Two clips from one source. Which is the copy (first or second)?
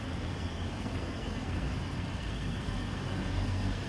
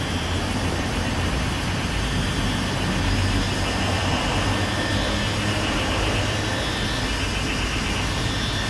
first